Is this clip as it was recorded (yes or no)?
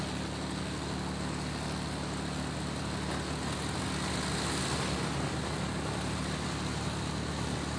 yes